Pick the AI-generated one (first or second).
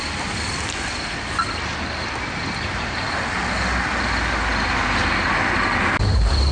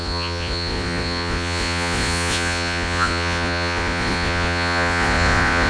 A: second